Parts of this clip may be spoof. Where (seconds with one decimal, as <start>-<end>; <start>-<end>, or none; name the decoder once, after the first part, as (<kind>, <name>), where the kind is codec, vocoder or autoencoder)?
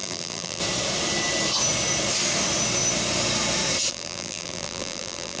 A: 0.0-0.6 (vocoder, BigVGAN v2); 3.9-5.4